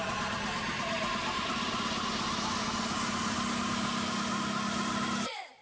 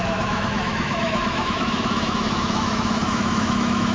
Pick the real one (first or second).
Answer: first